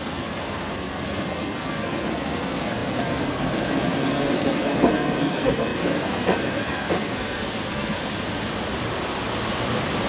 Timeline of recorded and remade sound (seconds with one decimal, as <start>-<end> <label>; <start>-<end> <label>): 0.0-8.0 remade; 8.0-10.1 recorded